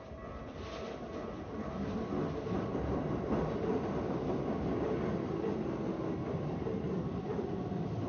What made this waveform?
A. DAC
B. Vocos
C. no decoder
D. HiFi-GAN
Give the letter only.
C